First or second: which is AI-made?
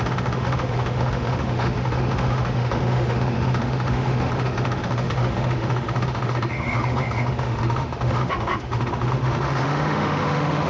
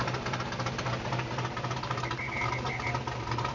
first